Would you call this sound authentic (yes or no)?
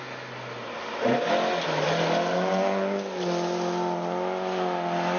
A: yes